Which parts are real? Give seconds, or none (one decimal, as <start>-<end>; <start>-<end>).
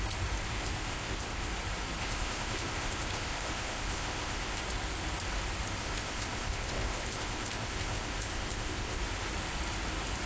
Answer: 0.0-0.5; 1.5-2.0; 4.6-5.8; 9.0-10.3